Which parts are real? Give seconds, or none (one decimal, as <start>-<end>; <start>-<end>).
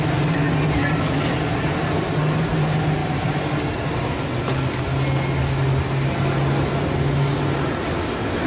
0.0-3.0; 3.9-8.5